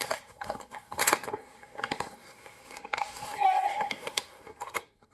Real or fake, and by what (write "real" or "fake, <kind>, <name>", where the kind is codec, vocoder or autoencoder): fake, codec, SNAC